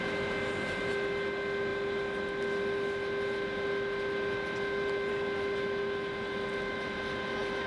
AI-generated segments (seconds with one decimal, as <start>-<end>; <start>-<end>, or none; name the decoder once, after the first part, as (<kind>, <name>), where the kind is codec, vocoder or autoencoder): none